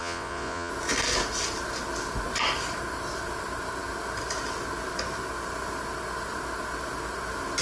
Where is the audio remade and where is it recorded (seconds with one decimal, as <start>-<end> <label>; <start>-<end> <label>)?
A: 0.0-0.7 remade; 0.7-7.6 recorded